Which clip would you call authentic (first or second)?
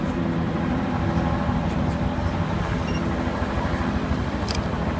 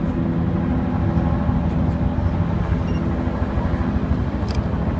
second